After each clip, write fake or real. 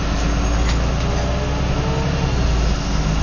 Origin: real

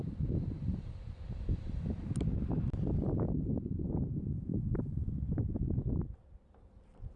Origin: real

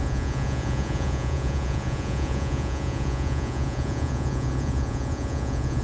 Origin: fake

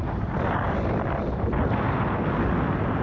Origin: real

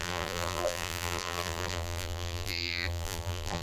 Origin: fake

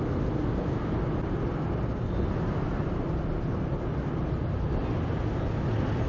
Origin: real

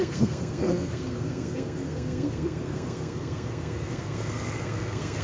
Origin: fake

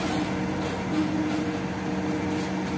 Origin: real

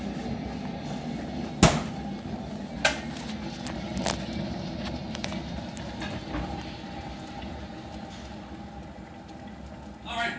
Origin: real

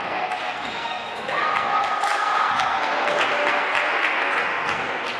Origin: fake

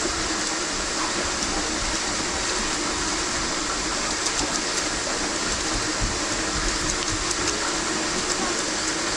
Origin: real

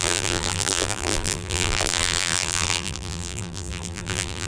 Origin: fake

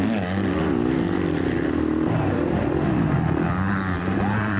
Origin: real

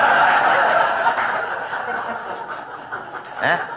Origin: real